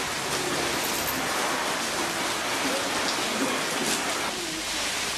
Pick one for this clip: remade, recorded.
recorded